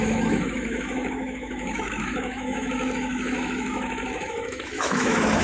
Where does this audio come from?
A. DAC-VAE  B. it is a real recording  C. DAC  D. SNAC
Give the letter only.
A